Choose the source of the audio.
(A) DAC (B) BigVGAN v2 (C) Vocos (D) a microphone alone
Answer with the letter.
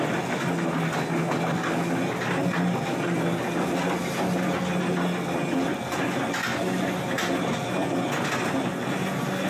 D